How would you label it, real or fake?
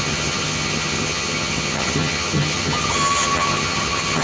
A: fake